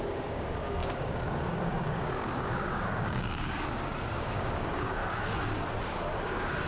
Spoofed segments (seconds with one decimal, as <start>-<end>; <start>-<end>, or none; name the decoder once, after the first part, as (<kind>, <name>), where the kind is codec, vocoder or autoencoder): 0.0-5.0 (codec, DAC); 6.2-6.7